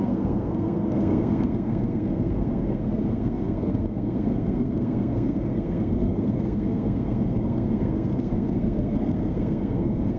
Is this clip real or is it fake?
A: fake